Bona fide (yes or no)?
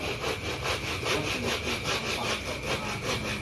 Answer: yes